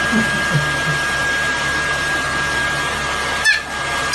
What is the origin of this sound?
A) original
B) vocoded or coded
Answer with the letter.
A